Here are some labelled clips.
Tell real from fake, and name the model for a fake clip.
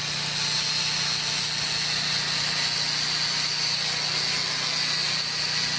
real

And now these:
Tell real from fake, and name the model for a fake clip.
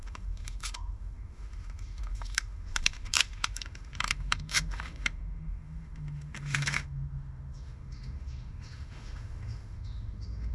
fake, autoencoder, DAC-VAE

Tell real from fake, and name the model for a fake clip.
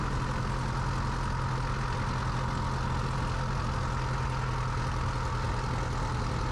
real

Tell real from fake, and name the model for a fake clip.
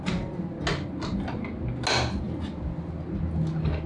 real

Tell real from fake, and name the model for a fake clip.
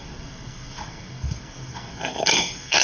fake, codec, SNAC